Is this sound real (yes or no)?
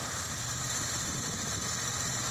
yes